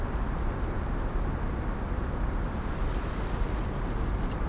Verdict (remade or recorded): recorded